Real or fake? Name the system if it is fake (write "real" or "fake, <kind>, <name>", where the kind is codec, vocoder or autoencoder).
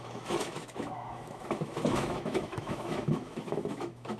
fake, autoencoder, DAC-VAE